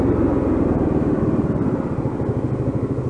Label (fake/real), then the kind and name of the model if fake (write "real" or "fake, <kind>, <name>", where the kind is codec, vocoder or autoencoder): real